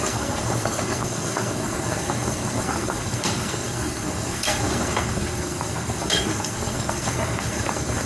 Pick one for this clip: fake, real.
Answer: fake